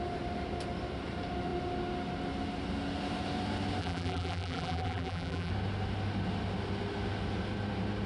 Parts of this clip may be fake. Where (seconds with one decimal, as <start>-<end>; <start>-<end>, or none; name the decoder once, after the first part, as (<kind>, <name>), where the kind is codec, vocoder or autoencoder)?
3.8-5.5 (vocoder, BigVGAN v2)